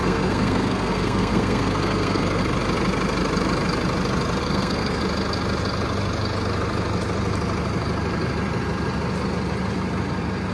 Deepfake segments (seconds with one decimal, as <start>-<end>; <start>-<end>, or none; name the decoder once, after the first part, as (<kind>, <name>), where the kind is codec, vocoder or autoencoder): 0.0-2.4 (codec, SNAC); 4.4-5.0